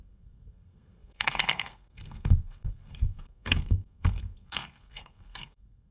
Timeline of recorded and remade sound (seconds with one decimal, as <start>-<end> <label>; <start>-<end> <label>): 0.0-5.9 remade